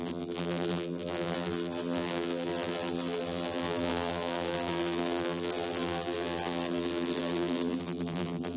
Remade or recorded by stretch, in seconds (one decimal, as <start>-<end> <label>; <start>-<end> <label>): 0.0-8.6 remade